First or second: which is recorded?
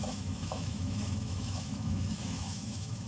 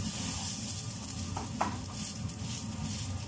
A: second